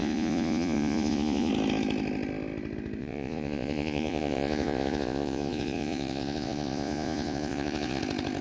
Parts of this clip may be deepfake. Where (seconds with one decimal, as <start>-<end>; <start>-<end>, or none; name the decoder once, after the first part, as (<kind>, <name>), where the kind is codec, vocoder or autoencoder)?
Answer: 0.0-1.5 (vocoder, Vocos); 3.0-8.0